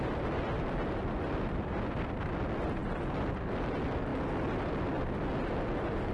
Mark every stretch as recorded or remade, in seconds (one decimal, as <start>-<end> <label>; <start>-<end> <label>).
0.0-6.1 recorded